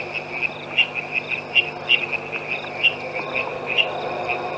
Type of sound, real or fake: real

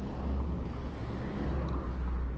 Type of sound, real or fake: real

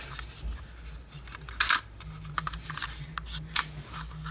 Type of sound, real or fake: real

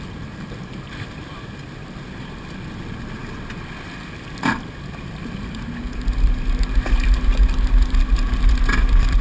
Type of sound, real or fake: real